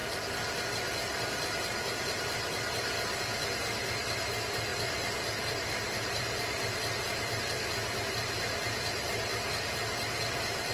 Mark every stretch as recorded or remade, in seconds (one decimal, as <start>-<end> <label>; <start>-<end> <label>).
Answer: 0.0-10.7 recorded